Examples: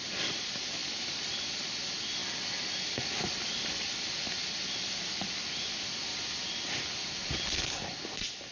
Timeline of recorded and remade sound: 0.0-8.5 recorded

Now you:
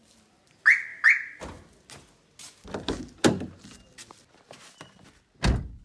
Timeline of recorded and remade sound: 0.0-5.8 recorded

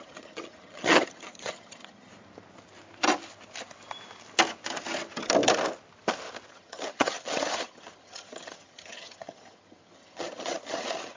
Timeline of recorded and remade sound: 0.0-2.1 remade; 2.1-6.5 recorded; 6.5-11.2 remade

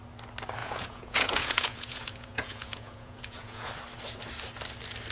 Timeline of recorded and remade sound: 0.0-0.6 recorded; 0.6-3.7 remade; 3.7-5.1 recorded

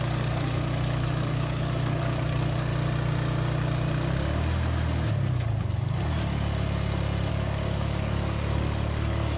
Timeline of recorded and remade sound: 0.0-2.7 remade; 2.7-7.3 recorded; 7.3-9.4 remade